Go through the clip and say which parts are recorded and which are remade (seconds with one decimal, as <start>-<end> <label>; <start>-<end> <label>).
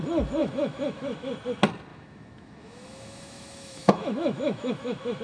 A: 0.0-0.4 recorded; 0.4-1.3 remade; 1.3-1.9 recorded; 1.9-5.2 remade